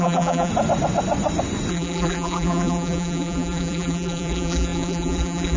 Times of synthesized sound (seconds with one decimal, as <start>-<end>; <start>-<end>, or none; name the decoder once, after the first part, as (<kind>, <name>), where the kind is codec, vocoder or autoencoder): 0.0-0.5 (vocoder, BigVGAN v2); 1.7-5.6